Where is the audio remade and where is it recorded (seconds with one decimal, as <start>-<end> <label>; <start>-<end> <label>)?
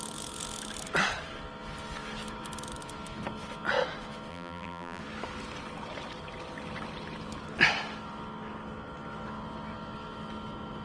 0.0-4.3 recorded; 4.3-5.0 remade; 5.0-10.8 recorded